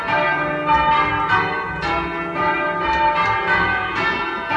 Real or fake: real